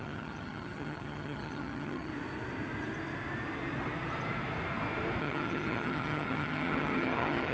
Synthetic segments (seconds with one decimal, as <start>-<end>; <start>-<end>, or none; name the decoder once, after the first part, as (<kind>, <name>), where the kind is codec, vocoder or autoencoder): 0.0-2.1 (vocoder, HiFi-GAN); 5.2-7.5

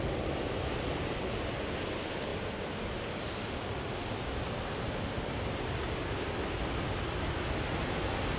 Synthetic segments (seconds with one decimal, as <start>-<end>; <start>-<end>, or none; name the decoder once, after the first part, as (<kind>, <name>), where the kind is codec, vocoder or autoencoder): none

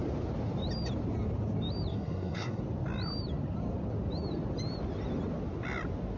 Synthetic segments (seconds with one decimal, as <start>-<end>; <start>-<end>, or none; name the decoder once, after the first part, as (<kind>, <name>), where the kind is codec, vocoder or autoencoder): 1.9-2.6 (codec, SNAC)

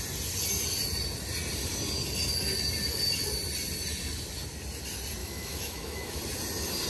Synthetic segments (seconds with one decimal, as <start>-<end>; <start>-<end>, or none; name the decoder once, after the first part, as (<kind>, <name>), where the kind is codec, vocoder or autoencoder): 5.2-6.2 (autoencoder, DAC-VAE)